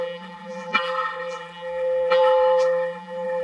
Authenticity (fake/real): fake